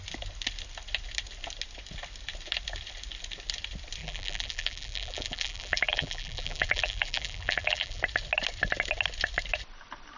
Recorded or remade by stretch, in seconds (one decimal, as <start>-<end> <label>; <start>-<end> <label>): 0.0-4.0 recorded; 4.0-8.0 remade; 8.0-10.2 recorded